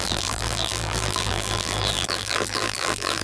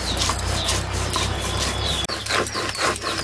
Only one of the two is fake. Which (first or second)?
first